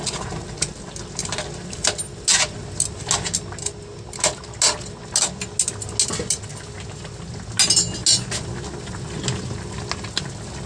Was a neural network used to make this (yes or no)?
no